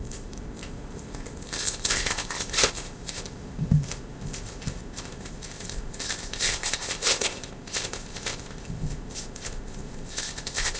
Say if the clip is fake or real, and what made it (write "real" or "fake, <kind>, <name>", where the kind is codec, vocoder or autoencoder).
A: fake, codec, ZipCodec